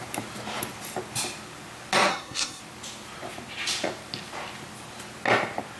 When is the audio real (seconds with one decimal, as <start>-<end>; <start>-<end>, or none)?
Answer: 0.0-2.1; 2.6-5.8